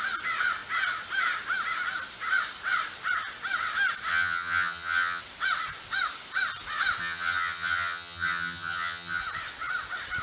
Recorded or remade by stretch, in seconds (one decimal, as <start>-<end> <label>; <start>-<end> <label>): 0.0-4.1 recorded; 4.1-5.2 remade; 5.2-7.0 recorded; 7.0-9.2 remade; 9.2-10.2 recorded